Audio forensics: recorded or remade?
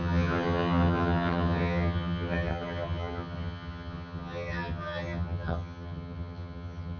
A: remade